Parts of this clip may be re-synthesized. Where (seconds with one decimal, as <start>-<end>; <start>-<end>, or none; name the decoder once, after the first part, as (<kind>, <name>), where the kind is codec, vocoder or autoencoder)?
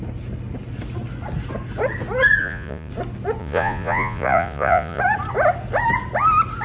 2.4-2.9 (vocoder, Vocos); 3.4-5.0